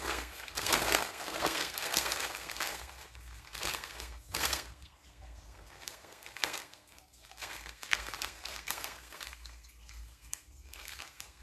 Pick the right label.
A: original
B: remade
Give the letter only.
B